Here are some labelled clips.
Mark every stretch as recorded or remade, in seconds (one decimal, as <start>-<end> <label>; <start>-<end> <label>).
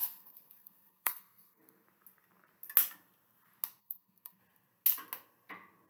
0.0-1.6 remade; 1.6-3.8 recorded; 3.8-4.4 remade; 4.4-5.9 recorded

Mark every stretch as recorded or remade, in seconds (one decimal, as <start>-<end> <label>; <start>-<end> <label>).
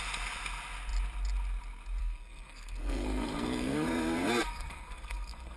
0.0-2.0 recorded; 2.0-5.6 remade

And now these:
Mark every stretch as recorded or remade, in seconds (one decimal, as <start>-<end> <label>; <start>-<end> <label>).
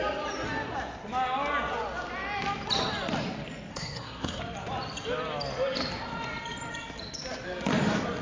0.0-3.7 recorded; 3.7-4.4 remade; 4.4-8.2 recorded